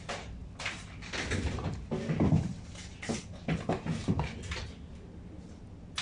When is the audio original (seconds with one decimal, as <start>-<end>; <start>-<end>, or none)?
0.0-6.0